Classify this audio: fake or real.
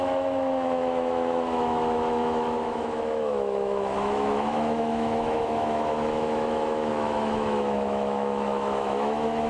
fake